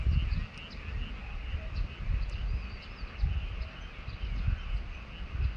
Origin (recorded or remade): recorded